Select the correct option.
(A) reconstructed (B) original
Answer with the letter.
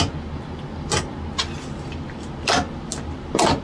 B